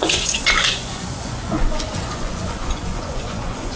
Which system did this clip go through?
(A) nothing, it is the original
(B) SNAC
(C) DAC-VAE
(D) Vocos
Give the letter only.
D